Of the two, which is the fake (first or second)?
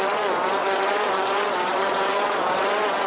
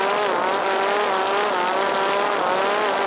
first